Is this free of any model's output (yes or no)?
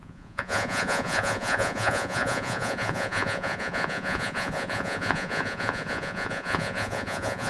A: no